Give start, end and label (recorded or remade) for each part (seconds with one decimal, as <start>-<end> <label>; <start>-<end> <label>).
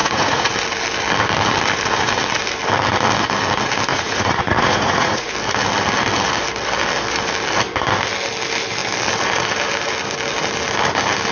0.0-0.5 remade; 0.5-3.9 recorded; 3.9-5.3 remade; 5.3-11.3 recorded